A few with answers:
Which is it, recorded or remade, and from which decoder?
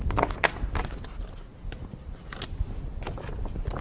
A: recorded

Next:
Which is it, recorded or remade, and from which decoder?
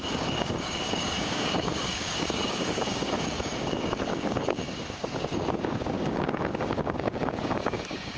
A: remade, codec, DAC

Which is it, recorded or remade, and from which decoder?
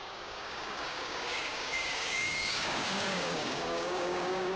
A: remade, codec, DAC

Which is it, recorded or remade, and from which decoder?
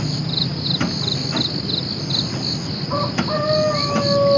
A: recorded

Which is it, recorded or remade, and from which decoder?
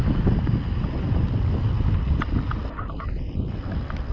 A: recorded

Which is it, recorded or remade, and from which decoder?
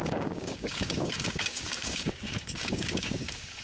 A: remade, codec, DAC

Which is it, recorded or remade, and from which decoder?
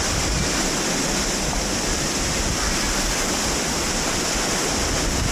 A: recorded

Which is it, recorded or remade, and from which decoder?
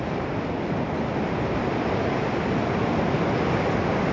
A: recorded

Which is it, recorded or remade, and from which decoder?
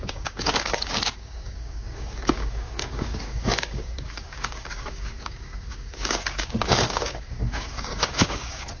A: remade, codec, DAC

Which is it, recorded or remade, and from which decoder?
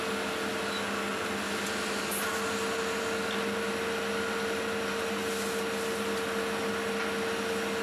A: recorded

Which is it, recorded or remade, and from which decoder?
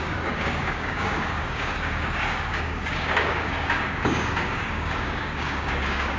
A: remade, codec, DAC